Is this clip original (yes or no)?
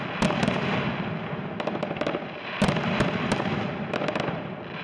yes